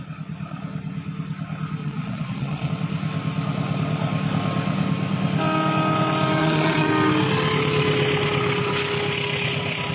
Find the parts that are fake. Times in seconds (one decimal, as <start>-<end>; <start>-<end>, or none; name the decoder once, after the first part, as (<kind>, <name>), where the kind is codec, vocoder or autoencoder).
1.8-2.7 (vocoder, Vocos); 6.4-6.9